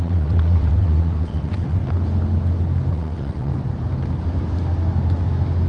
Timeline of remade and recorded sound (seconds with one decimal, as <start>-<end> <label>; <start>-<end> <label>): 0.0-1.8 remade; 1.8-2.9 recorded; 2.9-3.5 remade; 3.5-5.7 recorded